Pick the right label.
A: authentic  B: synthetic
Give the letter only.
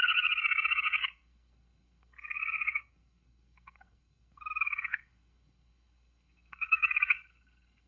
B